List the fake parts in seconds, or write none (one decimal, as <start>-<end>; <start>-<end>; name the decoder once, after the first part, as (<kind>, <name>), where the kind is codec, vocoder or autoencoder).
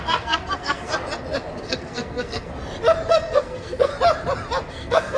0.0-0.9 (codec, SNAC); 1.6-2.5; 3.1-3.9; 4.7-5.2